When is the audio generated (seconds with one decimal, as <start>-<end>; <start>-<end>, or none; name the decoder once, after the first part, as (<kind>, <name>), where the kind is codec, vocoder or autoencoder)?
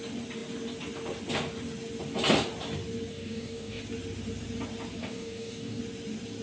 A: 3.1-3.8 (codec, DAC); 5.0-5.8